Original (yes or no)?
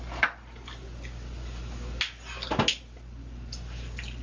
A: yes